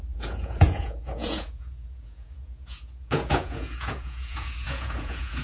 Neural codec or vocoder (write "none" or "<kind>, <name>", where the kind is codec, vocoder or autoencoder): vocoder, Vocos